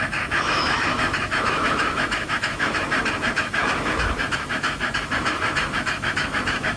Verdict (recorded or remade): remade